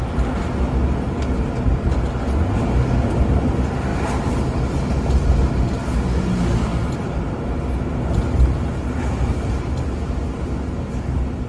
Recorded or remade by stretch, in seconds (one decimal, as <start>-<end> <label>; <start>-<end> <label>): 0.0-3.9 recorded; 3.9-4.8 remade; 4.8-11.5 recorded